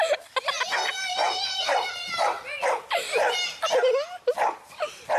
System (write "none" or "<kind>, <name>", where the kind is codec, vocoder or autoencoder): none